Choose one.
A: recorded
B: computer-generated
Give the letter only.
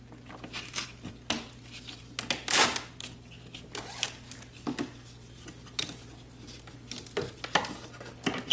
A